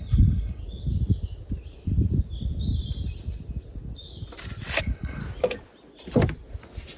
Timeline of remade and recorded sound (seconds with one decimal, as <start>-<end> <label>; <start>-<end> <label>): 0.0-0.6 remade; 0.6-4.8 recorded; 4.8-5.2 remade; 5.2-7.0 recorded